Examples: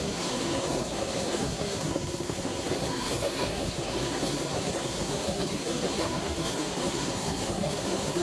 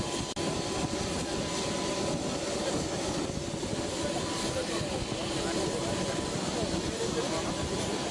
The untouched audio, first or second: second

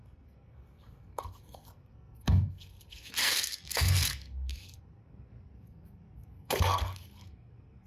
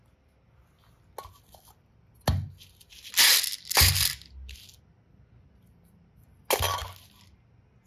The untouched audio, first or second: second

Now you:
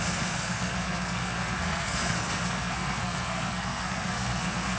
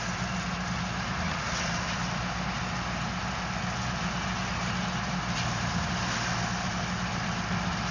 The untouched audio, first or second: second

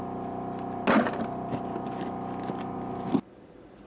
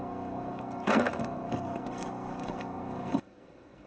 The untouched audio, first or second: first